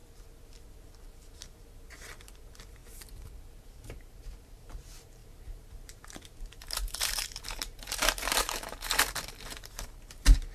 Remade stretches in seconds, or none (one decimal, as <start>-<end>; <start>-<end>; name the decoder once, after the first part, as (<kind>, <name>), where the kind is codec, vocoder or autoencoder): 1.1-10.5 (vocoder, BigVGAN v2)